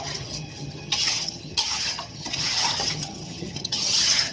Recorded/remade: remade